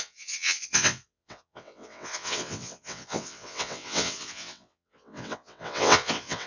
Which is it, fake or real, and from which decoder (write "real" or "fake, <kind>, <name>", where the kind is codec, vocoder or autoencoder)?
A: fake, vocoder, WaveNeXt